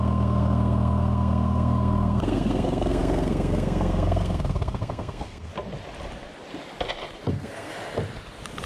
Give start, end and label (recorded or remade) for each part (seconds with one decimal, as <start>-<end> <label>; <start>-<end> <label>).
0.0-5.5 remade; 5.5-7.3 recorded; 7.3-7.7 remade; 7.7-8.7 recorded